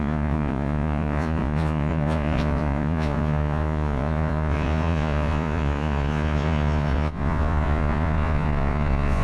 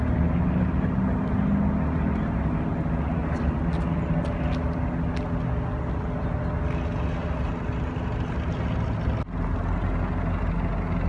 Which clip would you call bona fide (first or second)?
second